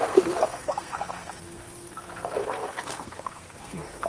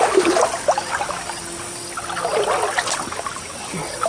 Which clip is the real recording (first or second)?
second